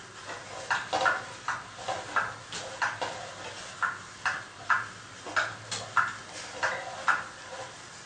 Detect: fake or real real